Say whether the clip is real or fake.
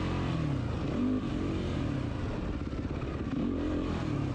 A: real